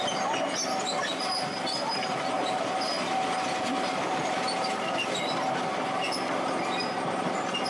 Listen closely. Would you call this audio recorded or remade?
recorded